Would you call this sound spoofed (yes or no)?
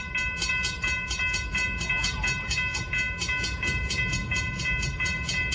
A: no